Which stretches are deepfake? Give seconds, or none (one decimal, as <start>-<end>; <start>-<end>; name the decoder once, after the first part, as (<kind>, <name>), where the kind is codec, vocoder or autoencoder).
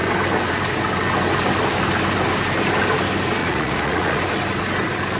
3.4-4.2 (vocoder, Vocos)